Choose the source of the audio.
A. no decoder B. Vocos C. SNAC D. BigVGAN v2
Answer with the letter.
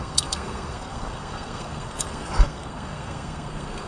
C